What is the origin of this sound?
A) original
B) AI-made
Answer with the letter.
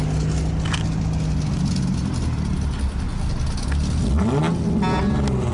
A